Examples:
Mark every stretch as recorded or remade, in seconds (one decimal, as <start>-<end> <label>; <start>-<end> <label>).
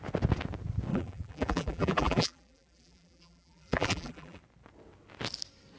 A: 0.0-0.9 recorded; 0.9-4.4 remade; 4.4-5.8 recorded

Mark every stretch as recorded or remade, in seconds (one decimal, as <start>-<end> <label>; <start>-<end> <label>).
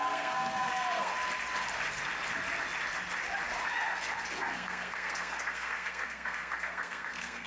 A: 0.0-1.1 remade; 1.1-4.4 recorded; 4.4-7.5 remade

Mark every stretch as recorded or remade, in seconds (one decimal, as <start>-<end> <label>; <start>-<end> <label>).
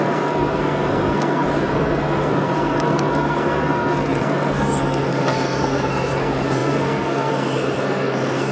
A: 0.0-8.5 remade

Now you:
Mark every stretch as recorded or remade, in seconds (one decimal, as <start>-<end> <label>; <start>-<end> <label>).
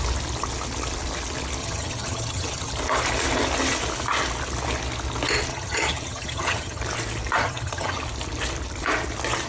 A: 0.0-1.6 recorded; 1.6-2.7 remade; 2.7-5.5 recorded; 5.5-6.8 remade; 6.8-7.4 recorded; 7.4-8.0 remade; 8.0-9.5 recorded